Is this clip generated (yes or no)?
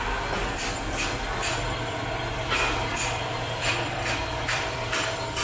yes